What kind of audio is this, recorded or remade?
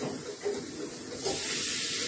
recorded